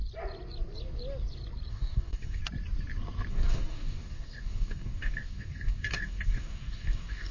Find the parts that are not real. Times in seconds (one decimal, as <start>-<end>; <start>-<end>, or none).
1.7-2.4; 3.3-7.3